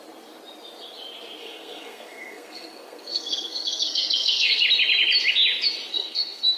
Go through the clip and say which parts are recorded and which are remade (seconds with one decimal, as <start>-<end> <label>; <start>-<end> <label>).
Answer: 0.0-1.4 recorded; 1.4-4.6 remade; 4.6-5.9 recorded; 5.9-6.6 remade